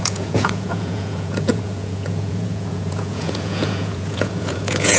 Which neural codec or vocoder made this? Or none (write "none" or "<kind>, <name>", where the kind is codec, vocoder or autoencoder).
vocoder, Vocos